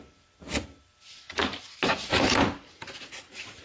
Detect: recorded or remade recorded